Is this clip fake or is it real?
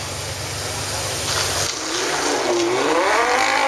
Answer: real